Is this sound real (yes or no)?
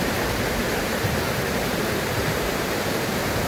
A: no